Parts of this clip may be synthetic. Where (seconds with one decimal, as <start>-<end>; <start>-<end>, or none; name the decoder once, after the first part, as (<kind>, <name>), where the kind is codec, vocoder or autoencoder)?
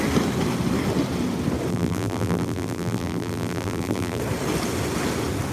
1.7-4.2 (vocoder, BigVGAN v2)